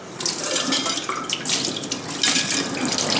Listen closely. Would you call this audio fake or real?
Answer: real